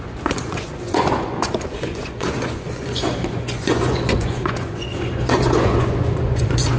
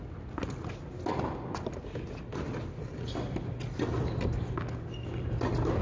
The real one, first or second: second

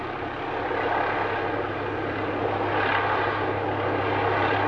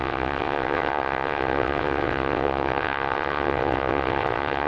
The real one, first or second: first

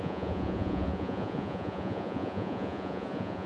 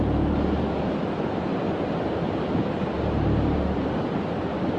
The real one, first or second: second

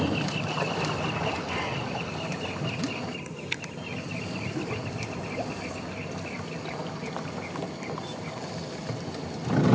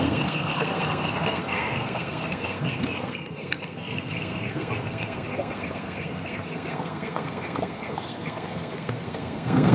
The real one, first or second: first